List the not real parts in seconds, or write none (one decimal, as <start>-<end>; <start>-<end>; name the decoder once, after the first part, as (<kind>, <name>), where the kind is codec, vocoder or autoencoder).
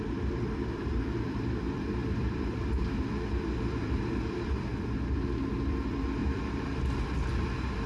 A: 0.0-4.7 (vocoder, BigVGAN v2); 5.6-6.2